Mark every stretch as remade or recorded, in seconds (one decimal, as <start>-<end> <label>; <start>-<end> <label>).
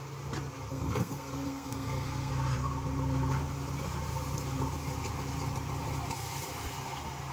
0.0-0.7 recorded; 0.7-2.3 remade; 2.3-7.3 recorded